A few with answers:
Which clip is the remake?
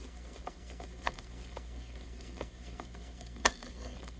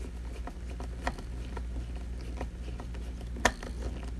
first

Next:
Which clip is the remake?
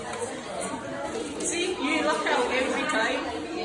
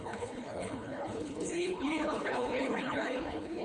second